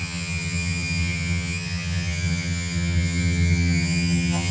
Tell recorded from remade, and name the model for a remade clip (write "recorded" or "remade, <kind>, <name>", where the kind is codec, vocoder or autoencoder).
remade, vocoder, HiFi-GAN